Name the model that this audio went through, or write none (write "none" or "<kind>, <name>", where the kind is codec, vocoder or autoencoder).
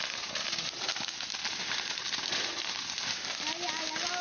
none